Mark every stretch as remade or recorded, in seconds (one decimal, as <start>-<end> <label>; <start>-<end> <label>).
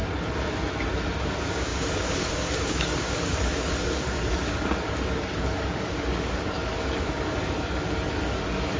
0.0-1.2 recorded; 1.2-8.8 remade